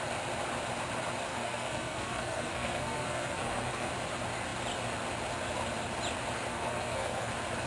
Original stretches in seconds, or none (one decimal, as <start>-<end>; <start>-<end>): 0.0-1.3; 3.9-6.5; 7.3-7.7